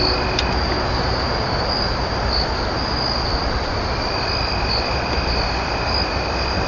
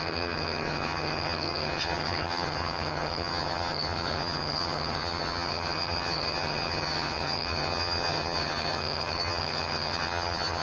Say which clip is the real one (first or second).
first